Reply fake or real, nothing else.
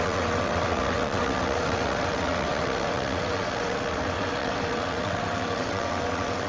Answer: fake